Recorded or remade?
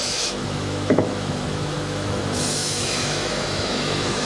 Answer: remade